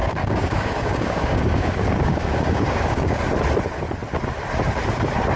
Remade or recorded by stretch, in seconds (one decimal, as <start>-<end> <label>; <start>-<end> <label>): 0.0-3.2 remade; 3.2-5.4 recorded